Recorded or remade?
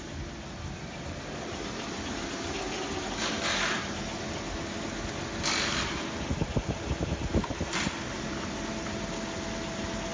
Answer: recorded